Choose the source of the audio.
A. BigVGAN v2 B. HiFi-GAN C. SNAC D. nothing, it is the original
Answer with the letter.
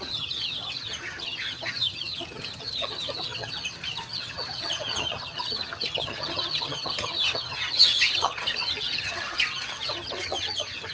B